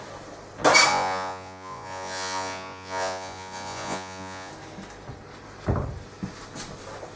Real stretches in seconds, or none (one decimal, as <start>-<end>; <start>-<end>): 0.0-0.9; 4.5-7.2